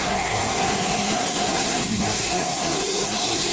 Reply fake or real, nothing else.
fake